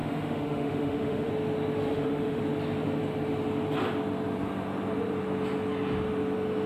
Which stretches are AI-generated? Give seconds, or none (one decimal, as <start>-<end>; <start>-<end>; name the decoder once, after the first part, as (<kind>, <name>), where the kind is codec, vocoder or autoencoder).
0.0-1.3 (autoencoder, DAC-VAE); 1.9-2.4